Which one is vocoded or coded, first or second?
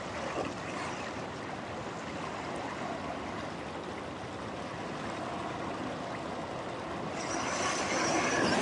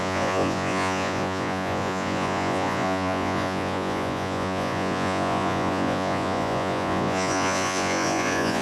second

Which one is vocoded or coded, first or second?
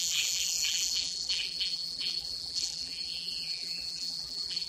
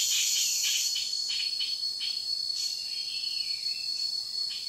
first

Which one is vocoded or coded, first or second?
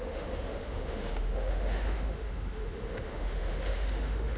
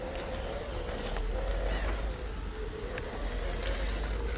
first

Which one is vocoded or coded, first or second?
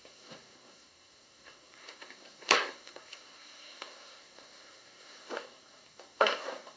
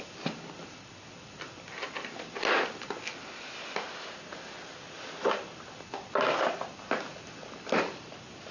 first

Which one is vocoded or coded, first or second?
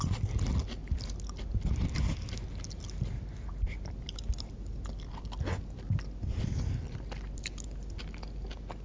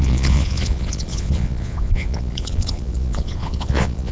second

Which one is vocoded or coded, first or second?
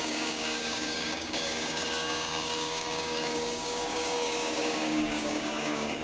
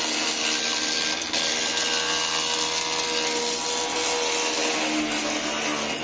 first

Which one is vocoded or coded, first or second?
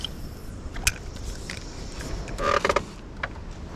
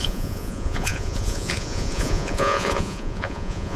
second